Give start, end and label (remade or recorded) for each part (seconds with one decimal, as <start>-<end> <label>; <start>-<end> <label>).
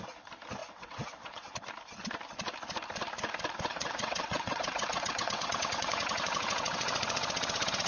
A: 0.0-0.6 recorded; 0.6-1.5 remade; 1.5-3.7 recorded; 3.7-7.9 remade